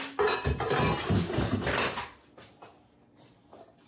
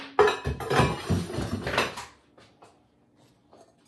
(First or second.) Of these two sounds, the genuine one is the second